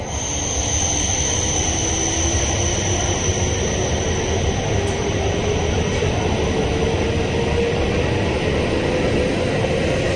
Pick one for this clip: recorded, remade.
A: recorded